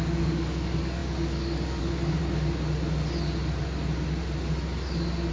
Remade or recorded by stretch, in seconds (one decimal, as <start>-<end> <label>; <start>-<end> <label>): 0.0-2.2 remade; 2.2-5.3 recorded